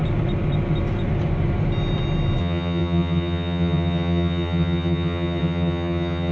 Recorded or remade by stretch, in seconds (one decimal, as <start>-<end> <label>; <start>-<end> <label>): 0.0-2.4 recorded; 2.4-6.3 remade